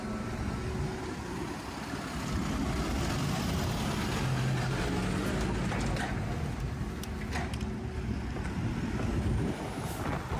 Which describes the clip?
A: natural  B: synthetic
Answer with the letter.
A